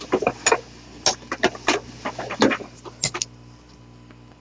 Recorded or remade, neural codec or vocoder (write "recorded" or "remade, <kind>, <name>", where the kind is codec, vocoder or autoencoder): recorded